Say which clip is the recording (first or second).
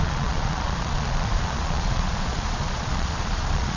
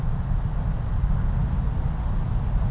second